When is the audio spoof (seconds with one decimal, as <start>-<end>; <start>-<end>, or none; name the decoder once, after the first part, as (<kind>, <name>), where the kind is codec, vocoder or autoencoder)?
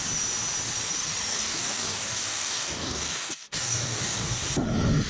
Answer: 1.3-4.4 (codec, DAC)